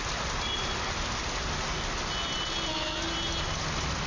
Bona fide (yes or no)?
yes